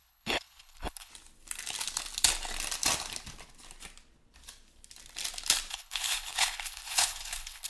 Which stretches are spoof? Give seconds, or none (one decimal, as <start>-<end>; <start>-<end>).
0.0-1.1; 5.7-7.7